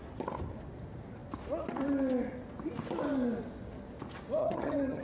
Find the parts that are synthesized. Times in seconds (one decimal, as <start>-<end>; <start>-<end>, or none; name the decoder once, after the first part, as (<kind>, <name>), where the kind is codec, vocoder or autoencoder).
4.4-5.0 (vocoder, HiFi-GAN)